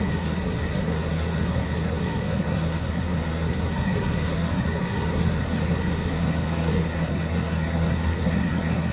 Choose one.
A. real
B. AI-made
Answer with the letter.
B